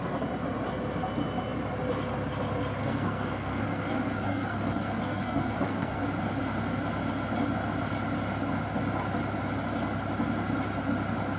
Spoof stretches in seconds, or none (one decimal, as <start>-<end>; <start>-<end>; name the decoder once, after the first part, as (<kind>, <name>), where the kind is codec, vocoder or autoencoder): 2.8-6.0 (codec, SNAC)